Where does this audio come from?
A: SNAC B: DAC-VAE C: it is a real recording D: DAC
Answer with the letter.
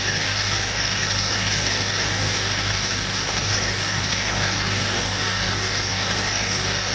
D